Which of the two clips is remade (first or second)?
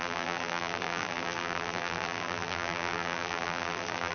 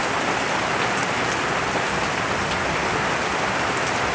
first